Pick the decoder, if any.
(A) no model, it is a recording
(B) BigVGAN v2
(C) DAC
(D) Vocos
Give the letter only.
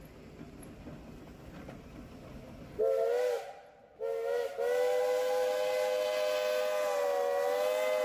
A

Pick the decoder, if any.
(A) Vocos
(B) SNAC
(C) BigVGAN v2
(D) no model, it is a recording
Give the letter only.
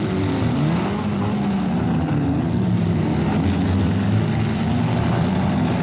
D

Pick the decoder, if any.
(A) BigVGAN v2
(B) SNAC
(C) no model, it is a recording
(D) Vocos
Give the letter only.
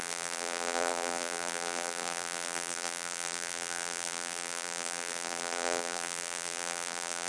A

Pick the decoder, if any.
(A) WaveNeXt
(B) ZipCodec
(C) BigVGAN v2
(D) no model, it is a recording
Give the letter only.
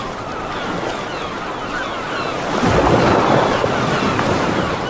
D